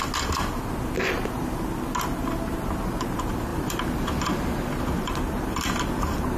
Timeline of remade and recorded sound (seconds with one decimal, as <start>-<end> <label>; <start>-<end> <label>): 0.0-6.4 recorded